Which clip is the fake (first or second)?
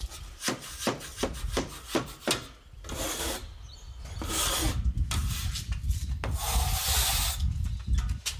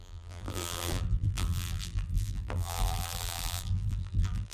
second